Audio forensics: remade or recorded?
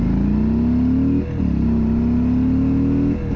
recorded